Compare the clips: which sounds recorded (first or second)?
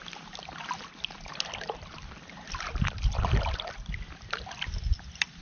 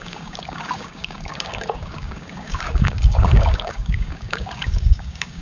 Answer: first